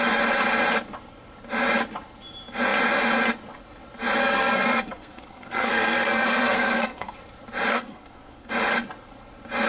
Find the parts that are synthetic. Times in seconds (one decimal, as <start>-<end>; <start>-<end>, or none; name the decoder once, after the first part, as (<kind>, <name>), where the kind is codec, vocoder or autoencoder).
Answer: 4.2-7.1 (codec, SNAC); 7.7-8.5